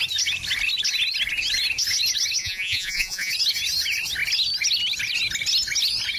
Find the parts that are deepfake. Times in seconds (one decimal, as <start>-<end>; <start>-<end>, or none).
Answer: 2.4-3.3